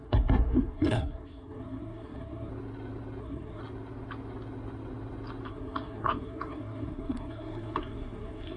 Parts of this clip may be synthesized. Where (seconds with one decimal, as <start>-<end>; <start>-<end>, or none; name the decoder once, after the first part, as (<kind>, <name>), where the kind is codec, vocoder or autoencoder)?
0.0-2.5 (codec, SNAC); 3.2-3.6; 5.5-8.6